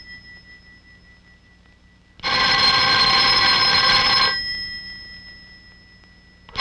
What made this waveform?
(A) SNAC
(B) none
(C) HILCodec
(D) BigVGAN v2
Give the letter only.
B